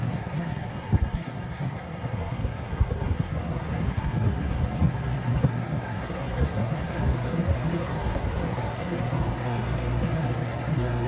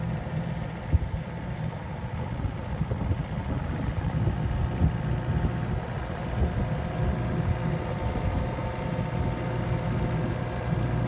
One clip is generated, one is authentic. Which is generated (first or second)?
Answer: first